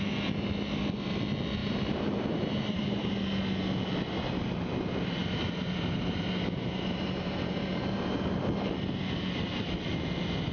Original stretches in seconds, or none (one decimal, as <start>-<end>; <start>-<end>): 0.0-1.6; 3.1-5.2; 8.5-10.5